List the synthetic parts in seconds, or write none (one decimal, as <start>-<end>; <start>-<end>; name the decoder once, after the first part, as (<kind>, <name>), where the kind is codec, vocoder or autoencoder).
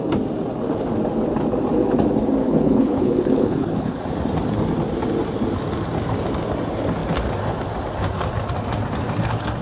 2.4-4.0 (codec, HILCodec)